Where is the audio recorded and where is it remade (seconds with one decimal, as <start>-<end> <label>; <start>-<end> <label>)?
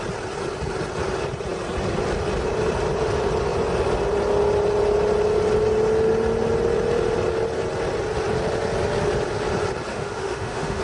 0.0-9.9 recorded; 9.9-10.8 remade